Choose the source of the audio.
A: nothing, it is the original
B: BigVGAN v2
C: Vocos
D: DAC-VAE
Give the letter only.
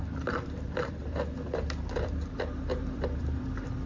B